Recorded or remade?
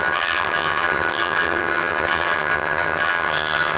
remade